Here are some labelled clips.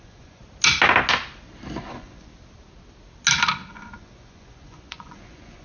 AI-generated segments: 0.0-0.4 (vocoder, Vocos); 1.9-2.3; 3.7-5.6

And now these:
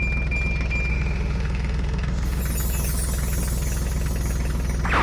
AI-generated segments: 0.9-2.4 (autoencoder, DAC-VAE)

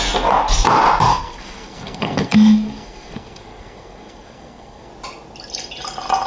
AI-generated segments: 1.1-4.9 (codec, SNAC)

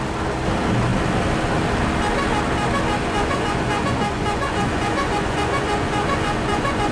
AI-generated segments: 3.0-6.9 (vocoder, Vocos)